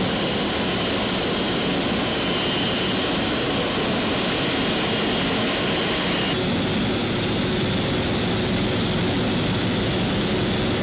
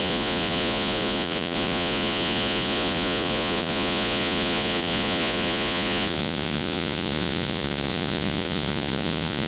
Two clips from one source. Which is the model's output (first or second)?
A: second